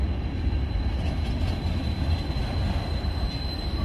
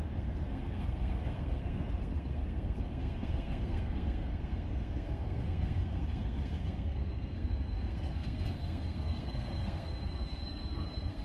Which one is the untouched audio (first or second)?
first